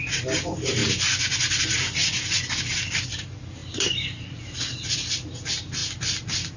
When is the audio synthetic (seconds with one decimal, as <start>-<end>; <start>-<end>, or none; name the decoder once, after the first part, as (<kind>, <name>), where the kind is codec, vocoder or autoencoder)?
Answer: 0.0-0.8 (vocoder, BigVGAN v2); 2.6-5.8